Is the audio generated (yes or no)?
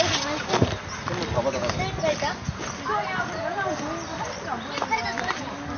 no